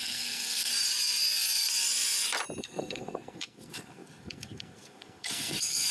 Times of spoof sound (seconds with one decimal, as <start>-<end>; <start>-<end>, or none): 0.0-0.7; 2.6-5.9